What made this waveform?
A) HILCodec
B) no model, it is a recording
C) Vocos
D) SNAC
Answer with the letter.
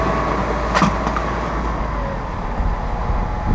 B